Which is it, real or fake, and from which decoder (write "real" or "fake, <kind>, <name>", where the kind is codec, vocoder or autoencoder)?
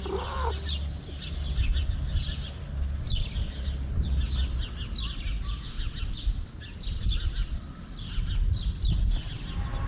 real